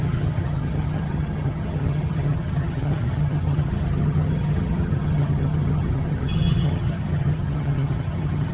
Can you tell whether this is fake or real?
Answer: fake